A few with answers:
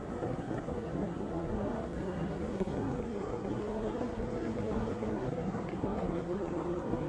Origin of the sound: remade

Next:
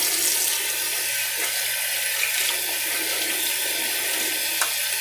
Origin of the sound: recorded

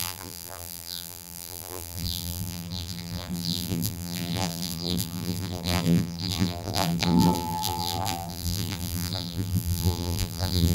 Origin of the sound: remade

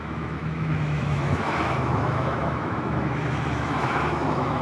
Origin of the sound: remade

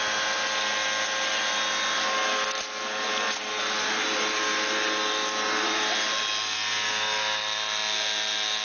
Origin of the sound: recorded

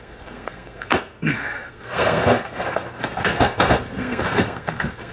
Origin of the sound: remade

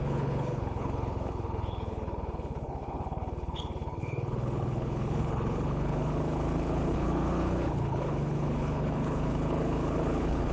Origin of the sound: remade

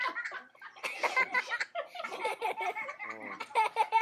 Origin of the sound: remade